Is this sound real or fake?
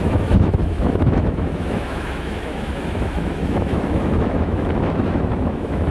fake